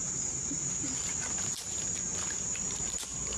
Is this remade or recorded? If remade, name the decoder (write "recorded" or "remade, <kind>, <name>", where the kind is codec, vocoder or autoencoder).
remade, vocoder, BigVGAN v2